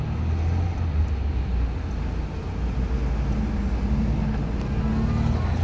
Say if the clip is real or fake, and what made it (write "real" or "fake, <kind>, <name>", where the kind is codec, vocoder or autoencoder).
real